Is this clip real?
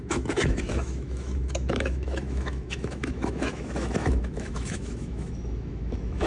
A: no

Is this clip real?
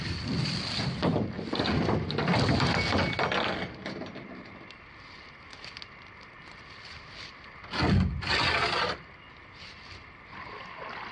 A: yes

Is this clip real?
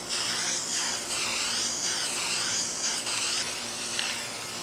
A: yes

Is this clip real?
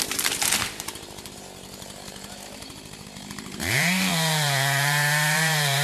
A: no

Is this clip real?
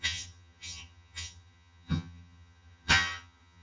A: no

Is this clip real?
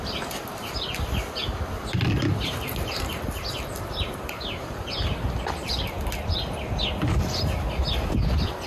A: yes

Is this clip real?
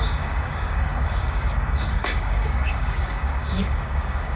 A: no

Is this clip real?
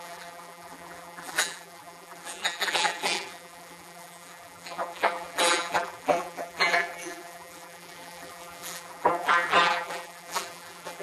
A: no